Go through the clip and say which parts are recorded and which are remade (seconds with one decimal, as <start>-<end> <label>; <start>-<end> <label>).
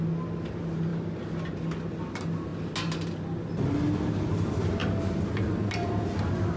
0.0-6.6 recorded